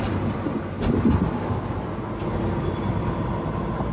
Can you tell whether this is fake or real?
real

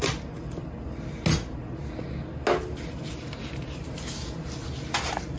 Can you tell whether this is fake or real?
real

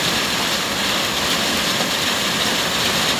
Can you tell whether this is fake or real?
real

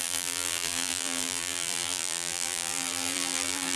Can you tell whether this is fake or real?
fake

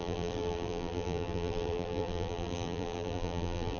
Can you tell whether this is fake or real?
fake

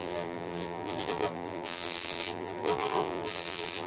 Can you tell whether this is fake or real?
fake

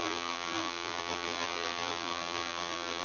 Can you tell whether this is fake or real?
fake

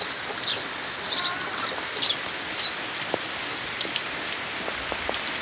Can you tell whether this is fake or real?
fake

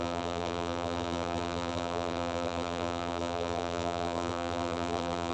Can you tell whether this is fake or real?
fake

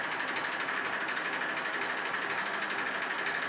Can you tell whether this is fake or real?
real